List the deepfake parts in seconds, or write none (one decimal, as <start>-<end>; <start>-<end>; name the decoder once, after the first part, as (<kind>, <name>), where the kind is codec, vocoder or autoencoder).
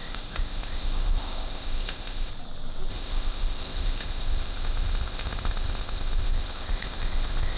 0.0-2.3 (codec, ZipCodec); 2.9-7.6